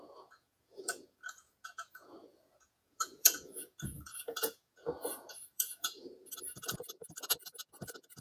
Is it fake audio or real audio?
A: fake